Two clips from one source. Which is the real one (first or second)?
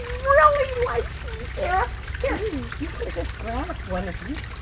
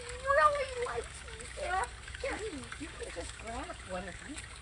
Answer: first